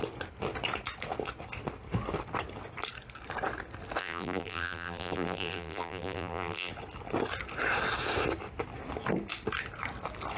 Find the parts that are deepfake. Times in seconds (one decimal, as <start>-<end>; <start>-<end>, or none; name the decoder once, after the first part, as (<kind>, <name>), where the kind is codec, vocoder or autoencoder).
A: 4.0-6.7 (vocoder, BigVGAN v2)